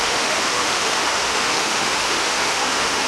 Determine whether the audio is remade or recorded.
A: remade